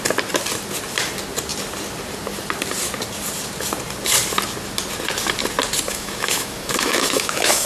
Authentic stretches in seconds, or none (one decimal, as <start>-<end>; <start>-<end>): 0.0-5.9